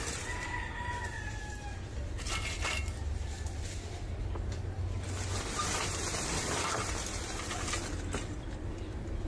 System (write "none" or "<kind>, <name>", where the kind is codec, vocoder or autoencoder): none